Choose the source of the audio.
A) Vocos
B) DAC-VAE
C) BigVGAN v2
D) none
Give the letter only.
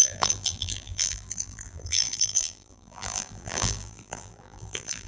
C